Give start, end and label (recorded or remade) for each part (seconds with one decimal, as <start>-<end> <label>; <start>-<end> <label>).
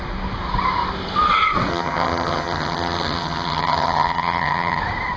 0.0-1.7 recorded; 1.7-4.8 remade; 4.8-5.2 recorded